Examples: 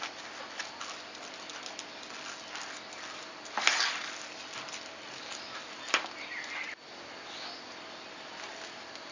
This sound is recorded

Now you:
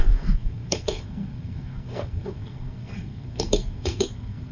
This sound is remade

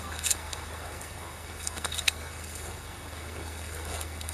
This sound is remade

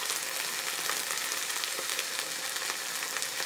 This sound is recorded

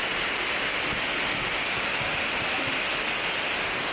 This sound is recorded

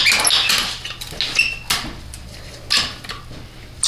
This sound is recorded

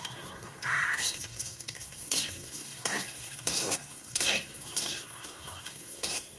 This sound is remade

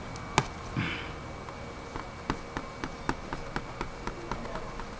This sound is recorded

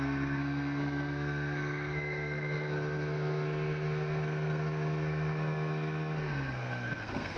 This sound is remade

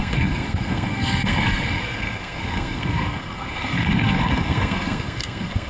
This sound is remade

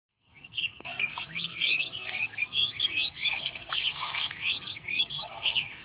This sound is remade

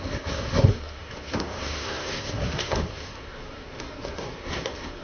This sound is remade